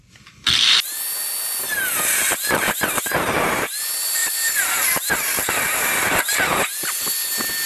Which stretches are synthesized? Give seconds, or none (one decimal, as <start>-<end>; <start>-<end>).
1.7-3.7; 4.2-6.8